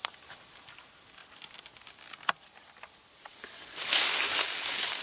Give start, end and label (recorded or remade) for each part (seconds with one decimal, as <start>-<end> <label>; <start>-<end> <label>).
0.0-3.3 recorded; 3.3-5.0 remade